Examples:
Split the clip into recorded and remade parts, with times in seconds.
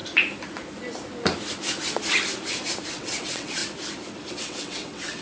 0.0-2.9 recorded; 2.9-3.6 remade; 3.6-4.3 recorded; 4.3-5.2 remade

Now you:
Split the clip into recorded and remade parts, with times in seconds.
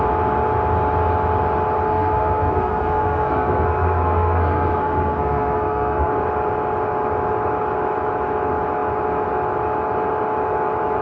0.0-1.9 recorded; 1.9-6.1 remade; 6.1-11.0 recorded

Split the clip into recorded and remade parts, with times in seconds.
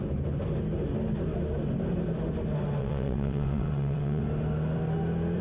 0.0-2.8 recorded; 2.8-4.2 remade; 4.2-5.4 recorded